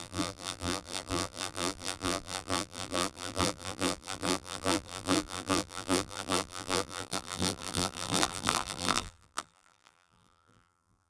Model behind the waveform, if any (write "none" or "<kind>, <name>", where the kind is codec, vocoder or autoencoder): vocoder, BigVGAN v2